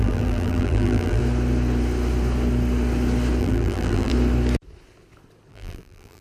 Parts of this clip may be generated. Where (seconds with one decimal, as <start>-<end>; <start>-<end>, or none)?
0.0-1.2; 3.4-4.1; 5.5-6.2